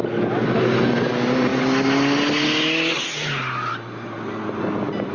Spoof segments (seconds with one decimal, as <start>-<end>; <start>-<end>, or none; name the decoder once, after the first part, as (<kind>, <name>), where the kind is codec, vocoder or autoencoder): none

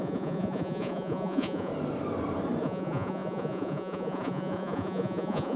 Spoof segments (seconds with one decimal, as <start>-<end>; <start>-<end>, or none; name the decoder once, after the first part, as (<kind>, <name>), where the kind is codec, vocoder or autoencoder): 0.0-1.7 (vocoder, Vocos); 2.6-5.6